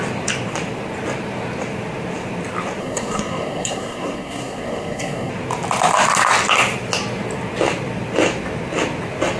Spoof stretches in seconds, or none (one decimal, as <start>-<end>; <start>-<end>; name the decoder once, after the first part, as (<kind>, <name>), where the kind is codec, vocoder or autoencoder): 2.8-5.3 (codec, SNAC)

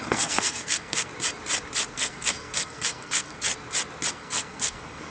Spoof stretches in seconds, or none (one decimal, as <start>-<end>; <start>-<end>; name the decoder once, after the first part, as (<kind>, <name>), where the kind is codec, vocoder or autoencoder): 0.0-1.1 (codec, SNAC); 1.9-3.5; 4.1-5.1

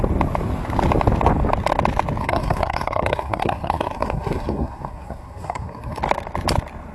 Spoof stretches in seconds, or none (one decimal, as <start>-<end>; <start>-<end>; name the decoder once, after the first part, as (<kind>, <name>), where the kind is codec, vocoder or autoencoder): 2.2-6.0 (codec, SNAC)

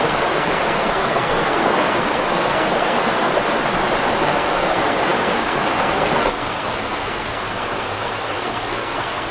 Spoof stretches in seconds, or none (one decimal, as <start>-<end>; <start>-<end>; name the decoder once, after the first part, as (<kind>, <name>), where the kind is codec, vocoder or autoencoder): 0.0-3.3 (codec, SNAC); 4.2-9.3